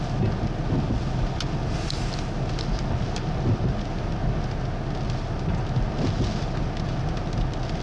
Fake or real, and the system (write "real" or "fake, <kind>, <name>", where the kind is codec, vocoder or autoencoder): real